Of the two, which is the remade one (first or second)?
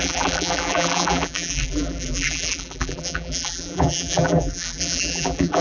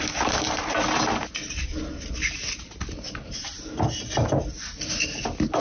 first